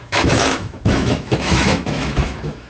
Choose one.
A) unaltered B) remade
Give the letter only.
B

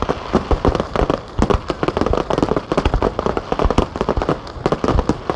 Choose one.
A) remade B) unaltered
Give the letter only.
B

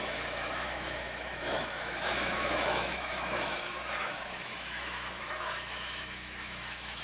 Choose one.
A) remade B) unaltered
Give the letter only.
A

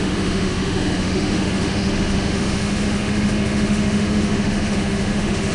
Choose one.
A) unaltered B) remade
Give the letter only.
B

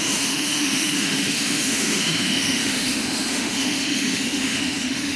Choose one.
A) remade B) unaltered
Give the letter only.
A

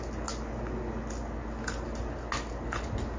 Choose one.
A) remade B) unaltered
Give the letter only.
B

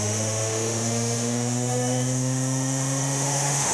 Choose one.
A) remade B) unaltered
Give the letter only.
A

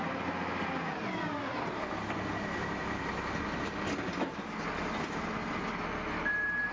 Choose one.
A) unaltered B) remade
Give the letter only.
A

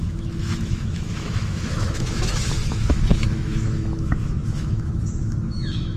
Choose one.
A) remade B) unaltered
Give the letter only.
A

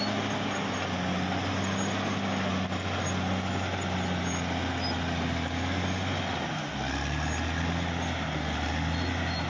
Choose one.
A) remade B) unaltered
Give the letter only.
B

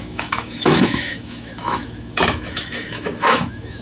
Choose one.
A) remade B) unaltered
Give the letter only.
A